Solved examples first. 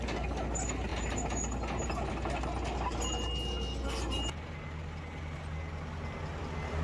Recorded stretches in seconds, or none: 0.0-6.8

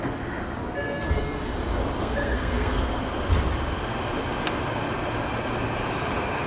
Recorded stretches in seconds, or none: 0.0-2.0; 3.0-6.5

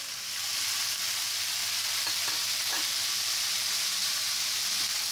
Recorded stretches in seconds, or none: 0.0-5.1

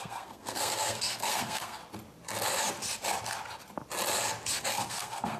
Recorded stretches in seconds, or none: 1.8-4.6

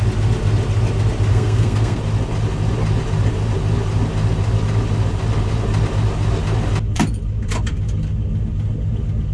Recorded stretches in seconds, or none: 0.0-1.3; 2.0-9.3

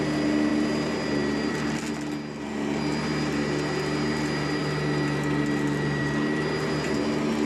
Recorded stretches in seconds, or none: 0.0-7.5